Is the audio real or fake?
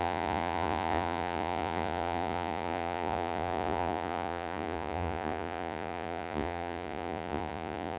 fake